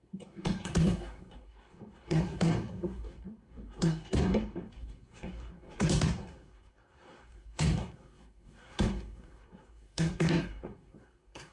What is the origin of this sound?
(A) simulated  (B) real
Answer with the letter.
A